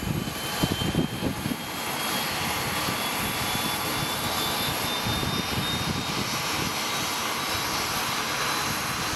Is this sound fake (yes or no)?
no